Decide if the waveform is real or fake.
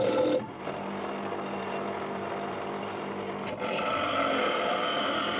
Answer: real